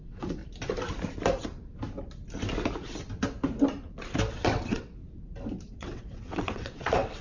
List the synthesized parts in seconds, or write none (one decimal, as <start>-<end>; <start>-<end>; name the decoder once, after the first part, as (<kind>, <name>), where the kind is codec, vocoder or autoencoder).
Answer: 0.0-0.4 (vocoder, WaveNeXt); 4.3-5.0; 5.7-7.2

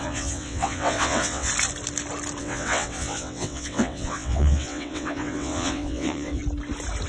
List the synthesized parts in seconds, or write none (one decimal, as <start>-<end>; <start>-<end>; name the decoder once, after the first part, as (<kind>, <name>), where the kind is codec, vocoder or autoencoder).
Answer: 0.0-1.5 (vocoder, WaveNeXt); 2.4-6.4

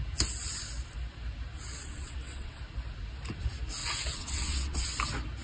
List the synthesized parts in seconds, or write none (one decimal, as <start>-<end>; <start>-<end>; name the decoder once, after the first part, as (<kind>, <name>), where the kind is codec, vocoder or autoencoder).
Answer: 1.7-2.6 (vocoder, WaveNeXt); 3.8-4.9

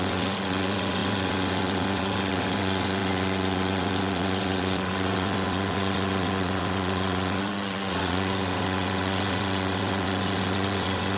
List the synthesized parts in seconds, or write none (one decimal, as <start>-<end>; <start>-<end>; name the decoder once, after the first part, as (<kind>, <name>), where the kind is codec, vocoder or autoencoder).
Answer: 0.0-11.2 (vocoder, WaveNeXt)

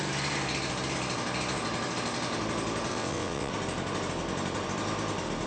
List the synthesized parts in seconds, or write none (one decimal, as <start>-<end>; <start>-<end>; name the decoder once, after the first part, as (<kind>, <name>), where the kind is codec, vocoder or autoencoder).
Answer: 2.9-3.5 (vocoder, WaveNeXt)

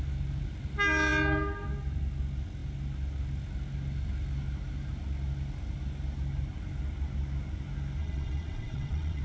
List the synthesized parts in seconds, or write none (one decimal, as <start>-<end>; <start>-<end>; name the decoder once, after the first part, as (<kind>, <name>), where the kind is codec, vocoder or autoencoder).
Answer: 8.0-9.2 (vocoder, WaveNeXt)

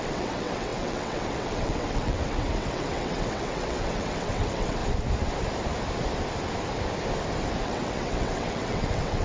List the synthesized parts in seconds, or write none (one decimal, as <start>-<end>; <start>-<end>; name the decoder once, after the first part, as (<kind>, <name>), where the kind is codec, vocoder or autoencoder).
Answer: 0.0-4.8 (vocoder, WaveNeXt); 7.6-9.2